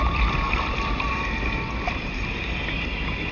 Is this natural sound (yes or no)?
yes